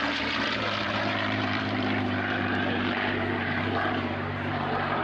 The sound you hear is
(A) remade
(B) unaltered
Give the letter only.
A